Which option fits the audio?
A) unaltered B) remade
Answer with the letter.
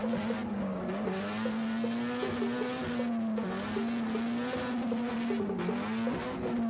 A